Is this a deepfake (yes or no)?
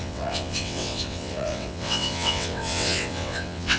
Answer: yes